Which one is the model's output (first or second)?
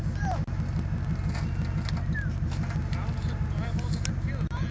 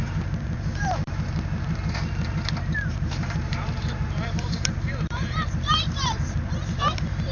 second